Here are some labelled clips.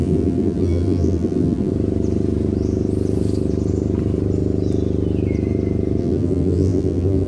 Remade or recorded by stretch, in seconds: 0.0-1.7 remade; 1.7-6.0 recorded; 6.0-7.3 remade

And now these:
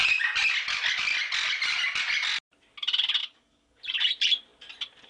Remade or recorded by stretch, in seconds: 0.0-3.2 recorded; 3.2-3.8 remade; 3.8-5.1 recorded